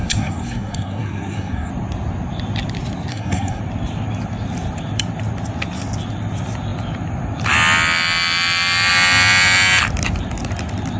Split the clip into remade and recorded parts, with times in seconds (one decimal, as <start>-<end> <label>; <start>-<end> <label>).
0.0-1.7 remade; 1.7-3.1 recorded; 3.1-3.6 remade; 3.6-11.0 recorded